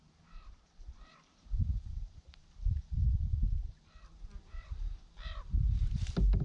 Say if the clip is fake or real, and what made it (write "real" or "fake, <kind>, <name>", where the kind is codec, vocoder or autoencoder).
fake, vocoder, BigVGAN v2